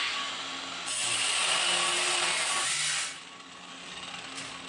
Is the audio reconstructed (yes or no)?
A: no